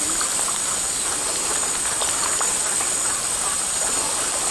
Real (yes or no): yes